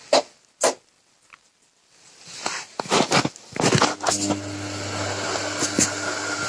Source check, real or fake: real